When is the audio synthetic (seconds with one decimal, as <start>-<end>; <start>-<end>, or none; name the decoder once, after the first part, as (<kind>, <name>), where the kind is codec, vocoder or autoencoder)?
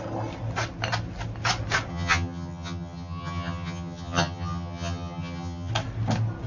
1.9-5.7 (vocoder, HiFi-GAN)